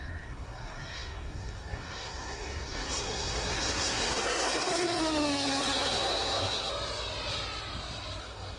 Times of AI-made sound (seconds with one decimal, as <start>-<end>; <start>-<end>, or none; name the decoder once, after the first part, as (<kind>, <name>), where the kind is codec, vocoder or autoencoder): 0.0-6.7 (codec, SNAC); 8.2-8.6